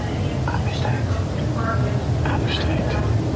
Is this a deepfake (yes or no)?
no